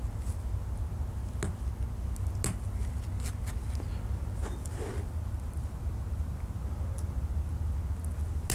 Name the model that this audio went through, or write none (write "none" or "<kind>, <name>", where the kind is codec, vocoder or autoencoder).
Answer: none